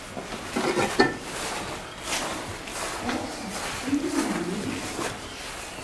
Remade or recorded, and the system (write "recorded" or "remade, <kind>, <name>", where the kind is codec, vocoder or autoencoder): recorded